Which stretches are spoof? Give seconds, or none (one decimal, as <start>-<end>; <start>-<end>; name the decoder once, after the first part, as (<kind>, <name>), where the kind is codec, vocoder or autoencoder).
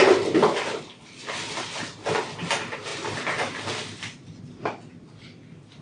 none